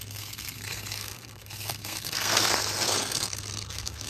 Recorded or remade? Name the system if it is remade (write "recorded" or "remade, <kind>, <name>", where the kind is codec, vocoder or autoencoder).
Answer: remade, codec, SNAC